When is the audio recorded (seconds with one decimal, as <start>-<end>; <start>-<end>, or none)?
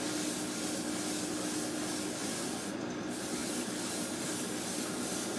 0.0-2.2; 2.8-5.4